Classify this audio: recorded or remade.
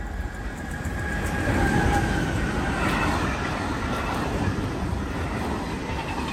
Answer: recorded